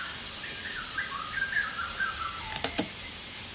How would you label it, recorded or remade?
recorded